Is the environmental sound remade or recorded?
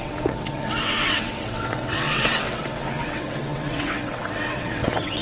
remade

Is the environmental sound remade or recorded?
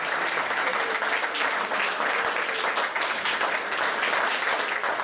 recorded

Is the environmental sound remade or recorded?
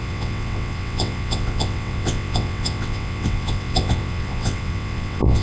remade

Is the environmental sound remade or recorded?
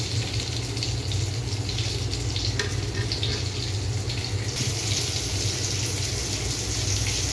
recorded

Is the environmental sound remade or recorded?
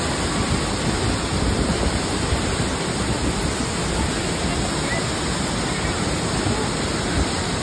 recorded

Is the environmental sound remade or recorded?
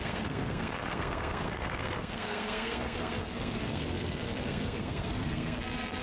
remade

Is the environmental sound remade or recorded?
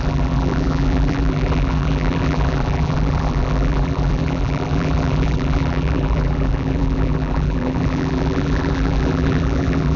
remade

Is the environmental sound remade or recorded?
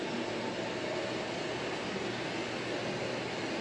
recorded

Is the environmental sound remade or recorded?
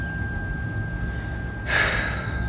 recorded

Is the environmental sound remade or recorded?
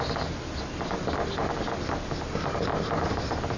recorded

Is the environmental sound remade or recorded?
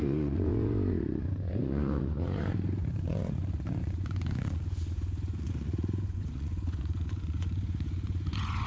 remade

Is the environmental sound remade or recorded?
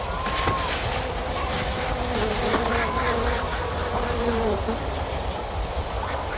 remade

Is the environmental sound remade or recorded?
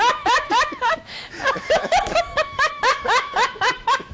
remade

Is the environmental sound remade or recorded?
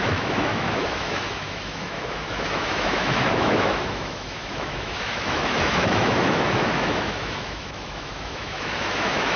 remade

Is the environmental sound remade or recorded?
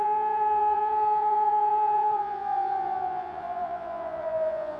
remade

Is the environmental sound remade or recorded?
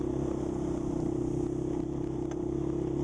recorded